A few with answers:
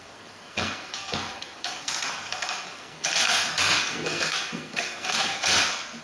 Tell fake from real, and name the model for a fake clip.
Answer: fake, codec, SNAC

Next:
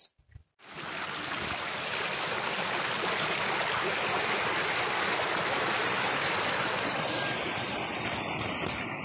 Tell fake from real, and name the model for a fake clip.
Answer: real